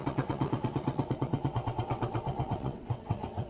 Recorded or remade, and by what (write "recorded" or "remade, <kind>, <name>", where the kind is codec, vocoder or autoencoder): remade, vocoder, WaveNeXt